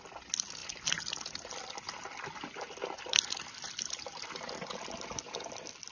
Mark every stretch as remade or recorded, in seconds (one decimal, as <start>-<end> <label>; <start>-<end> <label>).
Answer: 0.0-5.9 recorded